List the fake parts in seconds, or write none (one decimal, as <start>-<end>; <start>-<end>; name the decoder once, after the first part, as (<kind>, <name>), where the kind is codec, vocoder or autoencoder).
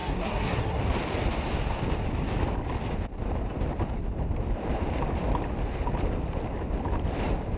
0.0-0.8 (codec, SNAC)